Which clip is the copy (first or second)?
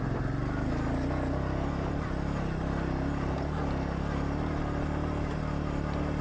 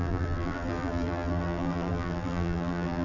second